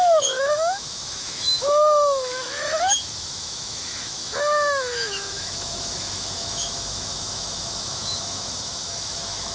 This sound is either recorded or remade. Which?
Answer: remade